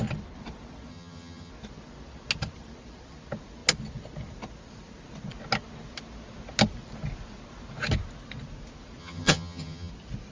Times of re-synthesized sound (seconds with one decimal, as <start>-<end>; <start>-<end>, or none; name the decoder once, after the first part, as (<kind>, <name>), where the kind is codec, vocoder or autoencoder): 0.9-1.5 (vocoder, HiFi-GAN); 9.0-9.9